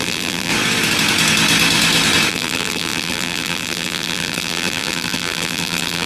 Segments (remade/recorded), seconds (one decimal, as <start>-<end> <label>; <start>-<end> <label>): 0.0-0.5 remade; 0.5-2.3 recorded; 2.3-6.1 remade